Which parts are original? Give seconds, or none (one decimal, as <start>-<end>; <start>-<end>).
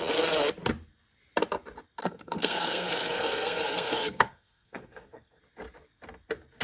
0.0-2.0; 5.4-6.6